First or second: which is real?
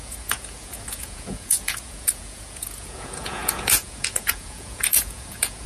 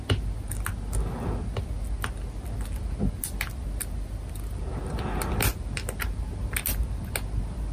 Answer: second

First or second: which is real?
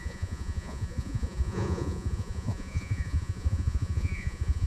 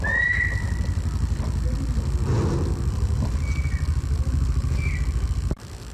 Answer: second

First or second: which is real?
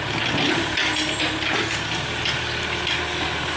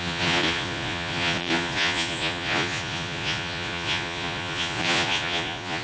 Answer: first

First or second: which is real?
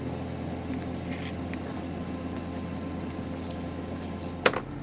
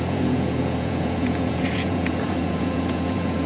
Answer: first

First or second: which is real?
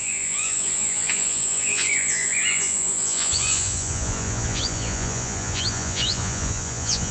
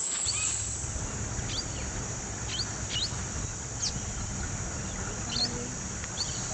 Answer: second